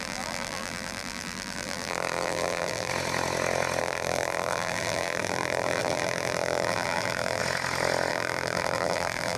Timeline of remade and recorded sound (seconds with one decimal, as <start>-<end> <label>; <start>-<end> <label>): 0.0-2.9 remade; 2.9-3.8 recorded; 3.8-7.4 remade; 7.4-8.1 recorded; 8.1-9.4 remade